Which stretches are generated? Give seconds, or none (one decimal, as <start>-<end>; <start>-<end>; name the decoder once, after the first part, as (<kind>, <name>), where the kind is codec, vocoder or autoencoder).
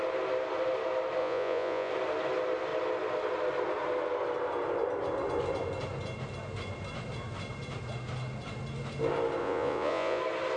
1.2-1.9 (vocoder, Vocos); 9.4-10.2